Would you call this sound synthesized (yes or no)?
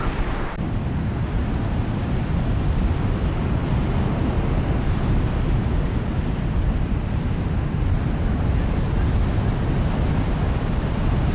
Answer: no